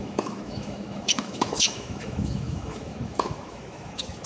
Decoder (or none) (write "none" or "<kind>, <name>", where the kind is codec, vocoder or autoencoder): autoencoder, DAC-VAE